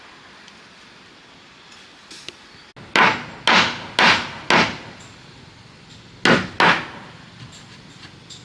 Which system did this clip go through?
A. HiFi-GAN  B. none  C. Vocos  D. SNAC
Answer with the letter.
B